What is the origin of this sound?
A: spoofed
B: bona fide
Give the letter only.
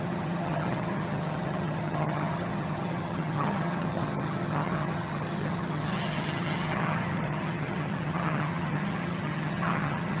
A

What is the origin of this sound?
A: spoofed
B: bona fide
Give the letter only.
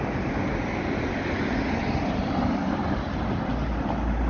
B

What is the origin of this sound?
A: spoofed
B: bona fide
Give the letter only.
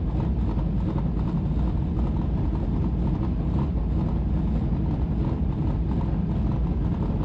B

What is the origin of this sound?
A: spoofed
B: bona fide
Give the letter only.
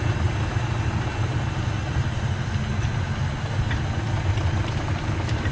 B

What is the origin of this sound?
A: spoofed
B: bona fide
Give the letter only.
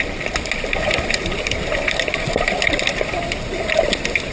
B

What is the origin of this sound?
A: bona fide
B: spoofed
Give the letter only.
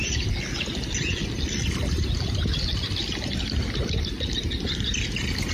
A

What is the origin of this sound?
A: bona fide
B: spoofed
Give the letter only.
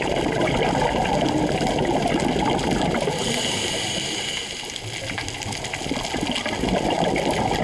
A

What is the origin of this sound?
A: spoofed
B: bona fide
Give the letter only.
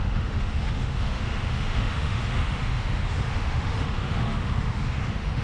A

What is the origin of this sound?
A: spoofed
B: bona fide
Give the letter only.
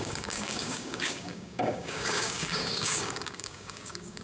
A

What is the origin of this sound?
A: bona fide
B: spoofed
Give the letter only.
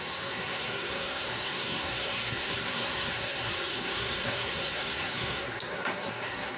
B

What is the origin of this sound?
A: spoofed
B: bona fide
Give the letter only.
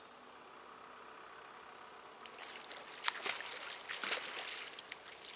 B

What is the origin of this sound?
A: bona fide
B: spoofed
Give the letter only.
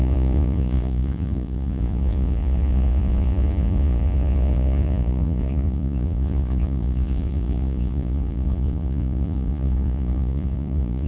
B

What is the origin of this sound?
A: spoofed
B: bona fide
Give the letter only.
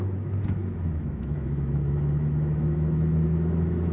A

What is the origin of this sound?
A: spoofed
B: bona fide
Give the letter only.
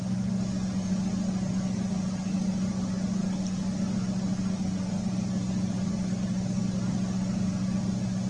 B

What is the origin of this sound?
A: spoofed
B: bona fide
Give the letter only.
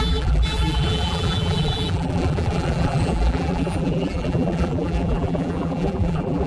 A